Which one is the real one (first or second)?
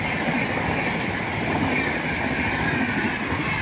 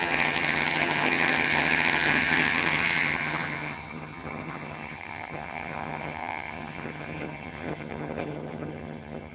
first